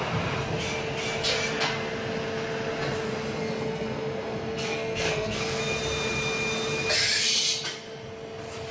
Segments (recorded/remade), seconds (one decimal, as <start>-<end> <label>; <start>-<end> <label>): 0.0-3.4 recorded; 3.4-5.6 remade; 5.6-8.7 recorded